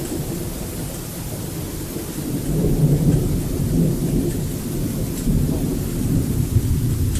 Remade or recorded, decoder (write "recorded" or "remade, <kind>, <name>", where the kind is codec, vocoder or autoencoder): recorded